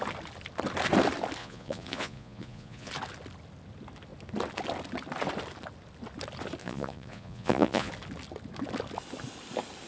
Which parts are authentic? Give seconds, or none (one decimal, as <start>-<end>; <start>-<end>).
0.0-1.4; 2.9-6.6; 7.9-9.9